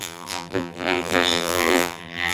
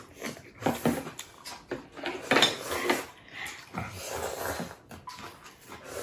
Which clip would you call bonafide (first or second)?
second